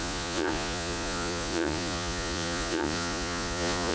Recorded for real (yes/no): no